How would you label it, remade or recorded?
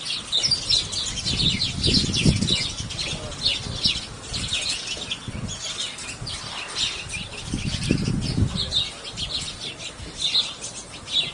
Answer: recorded